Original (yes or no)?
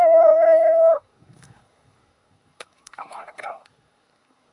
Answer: no